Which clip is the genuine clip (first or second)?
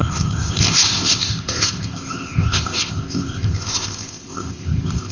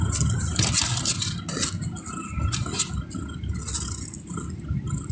second